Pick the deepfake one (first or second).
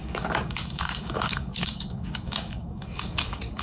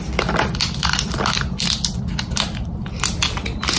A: first